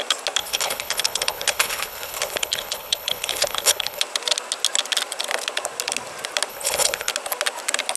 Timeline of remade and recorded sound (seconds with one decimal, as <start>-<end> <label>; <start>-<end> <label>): 0.0-0.4 recorded; 0.4-4.0 remade; 4.0-6.5 recorded; 6.5-7.1 remade; 7.1-8.0 recorded